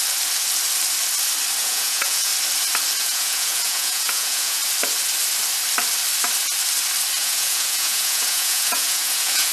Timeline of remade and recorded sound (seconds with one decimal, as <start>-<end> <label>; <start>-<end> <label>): 0.0-1.6 recorded; 1.6-2.3 remade; 2.3-3.0 recorded; 3.0-4.6 remade; 4.6-7.2 recorded; 7.2-9.5 remade